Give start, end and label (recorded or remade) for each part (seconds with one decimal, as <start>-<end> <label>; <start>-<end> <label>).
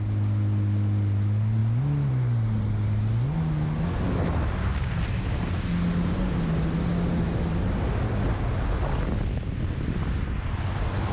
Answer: 0.0-11.1 recorded